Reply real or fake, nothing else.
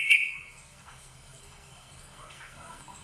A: fake